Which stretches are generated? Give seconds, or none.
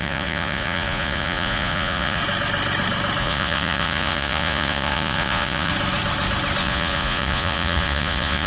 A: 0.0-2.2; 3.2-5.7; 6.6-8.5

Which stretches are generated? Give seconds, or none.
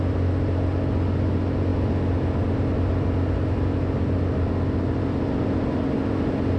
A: none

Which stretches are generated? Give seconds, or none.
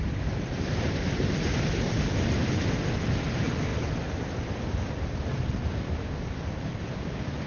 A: 0.0-3.7; 4.3-7.5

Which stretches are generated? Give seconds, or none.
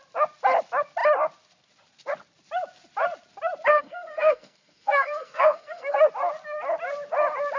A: 3.7-6.0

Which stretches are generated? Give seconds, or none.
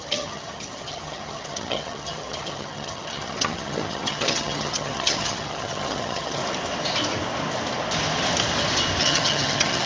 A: 0.0-6.4; 9.0-9.9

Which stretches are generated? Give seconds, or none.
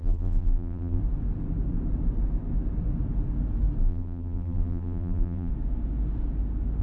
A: 0.0-1.0; 3.8-5.5